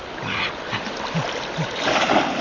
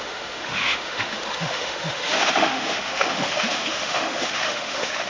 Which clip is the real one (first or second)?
first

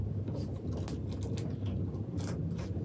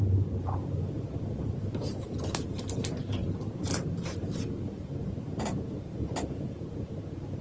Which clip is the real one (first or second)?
first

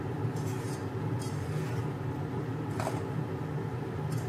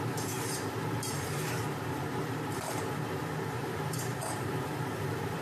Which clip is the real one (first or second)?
first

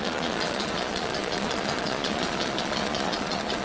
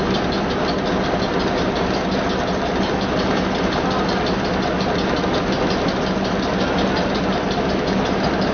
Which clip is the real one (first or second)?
second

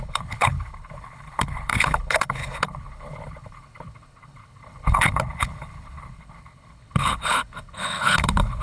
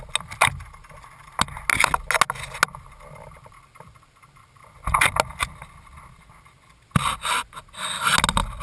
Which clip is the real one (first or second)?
second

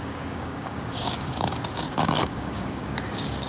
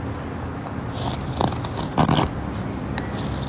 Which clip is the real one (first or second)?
second